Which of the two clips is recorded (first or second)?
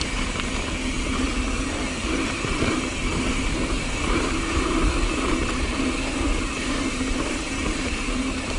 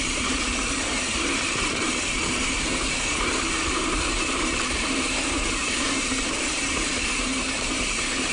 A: first